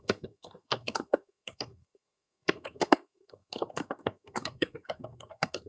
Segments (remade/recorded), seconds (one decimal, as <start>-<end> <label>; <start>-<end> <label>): 0.0-5.7 remade